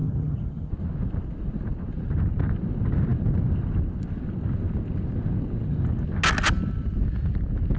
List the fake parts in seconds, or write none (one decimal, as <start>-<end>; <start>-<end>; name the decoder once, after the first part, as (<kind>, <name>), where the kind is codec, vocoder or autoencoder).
0.0-0.7 (vocoder, HiFi-GAN)